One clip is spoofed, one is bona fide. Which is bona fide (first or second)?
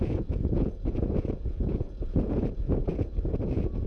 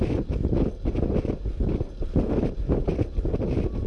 second